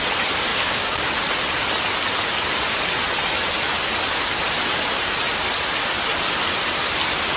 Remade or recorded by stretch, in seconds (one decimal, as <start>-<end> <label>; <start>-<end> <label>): 0.0-0.5 recorded; 0.5-1.1 remade; 1.1-7.4 recorded